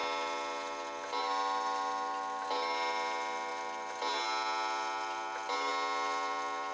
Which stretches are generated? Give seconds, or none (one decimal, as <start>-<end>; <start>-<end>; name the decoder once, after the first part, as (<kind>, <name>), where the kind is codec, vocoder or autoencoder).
none